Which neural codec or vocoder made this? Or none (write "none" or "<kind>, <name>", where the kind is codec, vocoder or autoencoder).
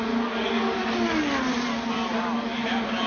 none